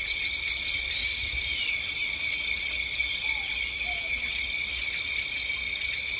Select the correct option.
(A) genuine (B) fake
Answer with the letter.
A